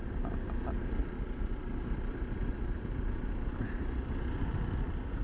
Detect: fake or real real